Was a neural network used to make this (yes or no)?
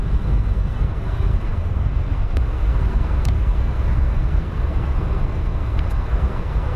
yes